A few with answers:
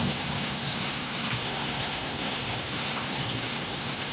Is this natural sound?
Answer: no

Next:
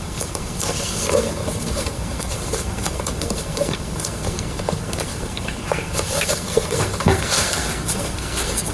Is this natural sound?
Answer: no